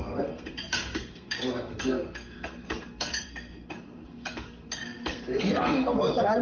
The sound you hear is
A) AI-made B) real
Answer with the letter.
A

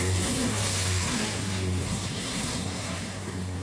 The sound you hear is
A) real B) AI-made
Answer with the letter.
B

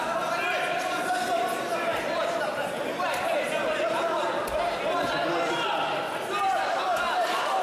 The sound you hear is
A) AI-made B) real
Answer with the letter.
B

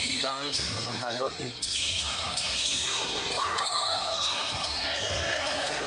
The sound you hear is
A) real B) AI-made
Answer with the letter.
B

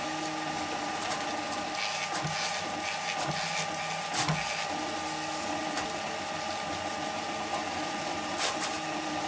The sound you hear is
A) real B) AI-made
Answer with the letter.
A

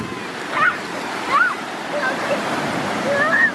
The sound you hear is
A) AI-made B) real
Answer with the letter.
B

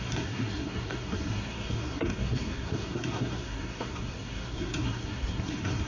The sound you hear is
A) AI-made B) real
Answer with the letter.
A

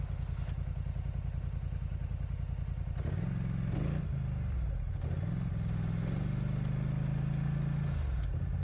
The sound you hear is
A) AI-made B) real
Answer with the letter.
B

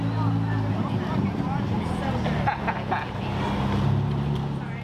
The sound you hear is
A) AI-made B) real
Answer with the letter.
B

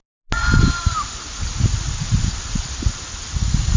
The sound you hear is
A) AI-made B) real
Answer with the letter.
B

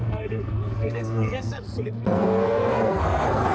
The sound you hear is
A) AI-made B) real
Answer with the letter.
A